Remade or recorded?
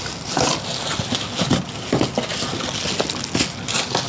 recorded